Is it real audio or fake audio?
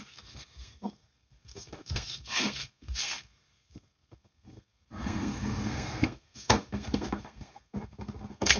fake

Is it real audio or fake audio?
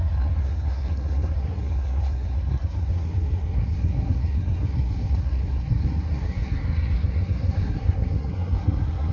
fake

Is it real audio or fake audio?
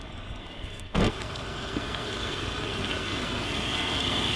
fake